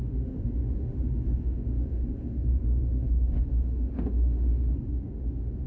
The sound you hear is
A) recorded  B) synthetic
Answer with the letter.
B